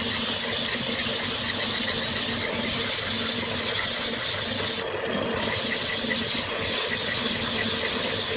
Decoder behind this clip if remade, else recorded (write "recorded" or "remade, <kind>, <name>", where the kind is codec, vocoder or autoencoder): recorded